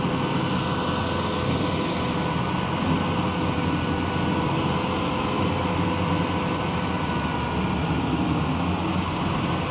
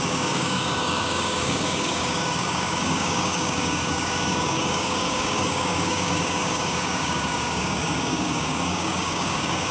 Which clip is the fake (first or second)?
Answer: second